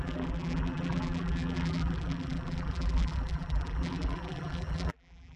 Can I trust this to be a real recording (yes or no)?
no